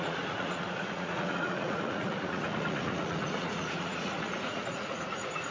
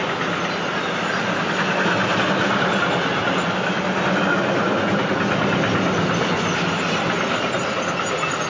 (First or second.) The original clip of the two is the second